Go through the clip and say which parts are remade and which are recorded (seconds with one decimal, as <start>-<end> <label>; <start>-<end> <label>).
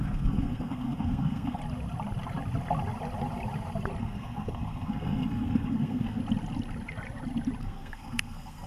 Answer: 0.0-1.6 remade; 1.6-4.0 recorded; 4.0-6.2 remade; 6.2-7.6 recorded; 7.6-8.7 remade